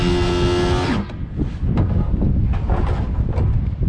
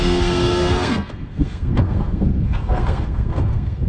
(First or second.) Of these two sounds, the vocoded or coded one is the second